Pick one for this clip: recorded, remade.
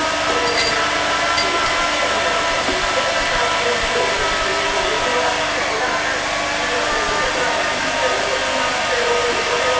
remade